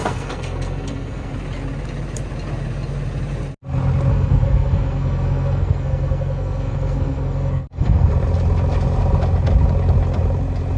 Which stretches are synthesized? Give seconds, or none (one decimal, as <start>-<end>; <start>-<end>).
0.0-1.3; 4.1-8.1